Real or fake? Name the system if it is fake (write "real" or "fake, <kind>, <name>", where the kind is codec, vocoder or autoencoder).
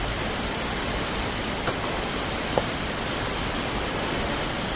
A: real